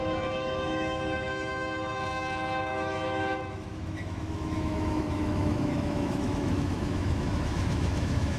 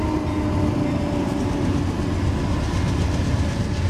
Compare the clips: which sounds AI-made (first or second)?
first